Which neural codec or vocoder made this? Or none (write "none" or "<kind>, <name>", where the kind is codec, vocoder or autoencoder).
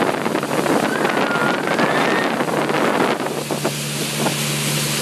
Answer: none